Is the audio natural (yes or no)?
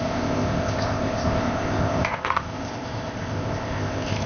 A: no